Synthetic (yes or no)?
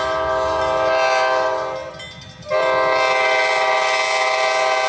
no